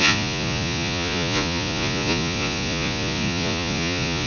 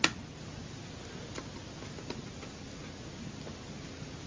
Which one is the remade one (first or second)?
first